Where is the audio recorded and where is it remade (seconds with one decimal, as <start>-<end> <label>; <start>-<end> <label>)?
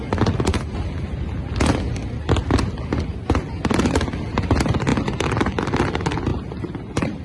0.0-0.5 recorded; 0.5-1.1 remade; 1.1-6.3 recorded; 6.3-7.2 remade